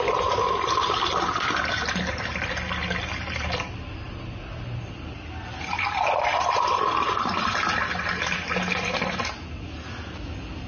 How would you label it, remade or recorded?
recorded